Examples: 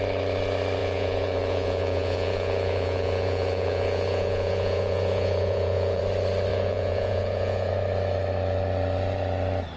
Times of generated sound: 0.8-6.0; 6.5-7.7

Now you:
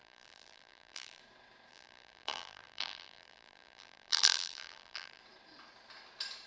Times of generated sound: 0.0-1.2; 1.7-5.2

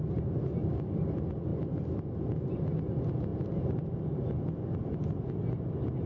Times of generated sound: 0.6-1.1

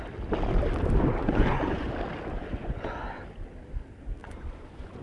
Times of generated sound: 1.2-1.9; 2.4-3.2; 4.2-5.0

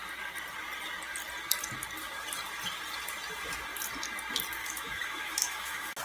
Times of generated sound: 4.6-6.0